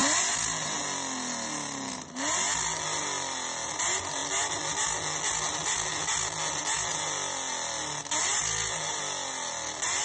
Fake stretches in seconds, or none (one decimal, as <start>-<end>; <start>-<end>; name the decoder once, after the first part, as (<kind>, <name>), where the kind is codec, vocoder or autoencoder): none